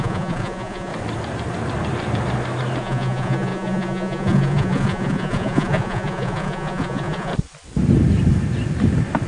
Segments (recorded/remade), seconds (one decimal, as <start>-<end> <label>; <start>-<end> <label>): 0.0-0.9 remade; 0.9-2.8 recorded; 2.8-7.3 remade; 7.3-9.3 recorded